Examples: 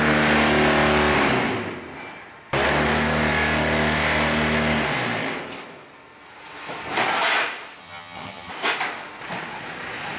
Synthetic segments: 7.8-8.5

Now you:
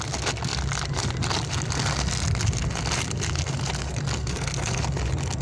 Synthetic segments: 4.2-4.8

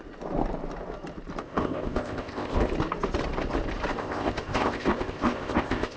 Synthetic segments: 1.4-2.7; 4.0-6.0

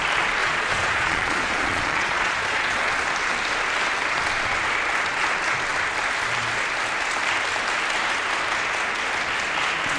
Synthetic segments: 0.4-2.9

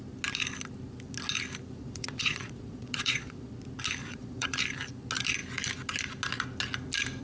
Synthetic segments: 1.8-3.5; 4.0-4.6